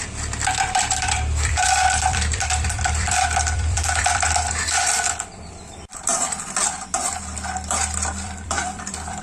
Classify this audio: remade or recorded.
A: remade